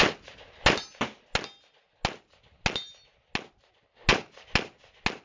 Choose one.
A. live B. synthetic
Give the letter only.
A